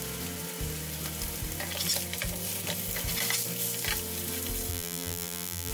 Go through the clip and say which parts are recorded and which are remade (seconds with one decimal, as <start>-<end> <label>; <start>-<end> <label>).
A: 0.0-4.7 recorded; 4.7-5.7 remade